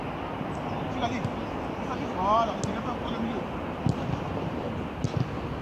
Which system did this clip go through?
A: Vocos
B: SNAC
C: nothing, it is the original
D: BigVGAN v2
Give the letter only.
C